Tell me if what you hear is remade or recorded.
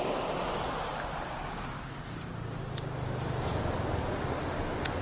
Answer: recorded